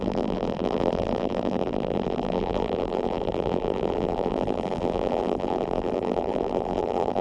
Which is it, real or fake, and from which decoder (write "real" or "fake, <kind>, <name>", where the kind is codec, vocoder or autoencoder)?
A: fake, vocoder, BigVGAN v2